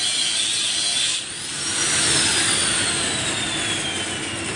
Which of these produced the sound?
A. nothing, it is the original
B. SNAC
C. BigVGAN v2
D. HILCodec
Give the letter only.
A